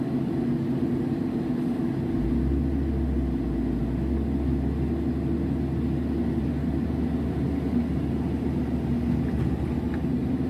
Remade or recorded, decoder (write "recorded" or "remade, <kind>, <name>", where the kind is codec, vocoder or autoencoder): recorded